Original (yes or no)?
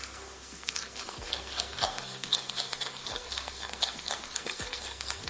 no